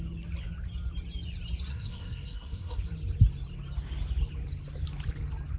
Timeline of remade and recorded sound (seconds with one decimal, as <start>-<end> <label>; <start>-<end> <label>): 0.0-1.7 recorded; 1.7-2.8 remade; 2.8-5.6 recorded